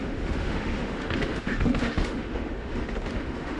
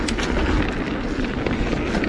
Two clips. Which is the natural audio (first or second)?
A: second